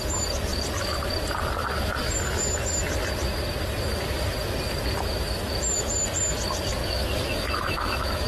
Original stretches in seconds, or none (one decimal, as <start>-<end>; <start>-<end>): 0.0-6.8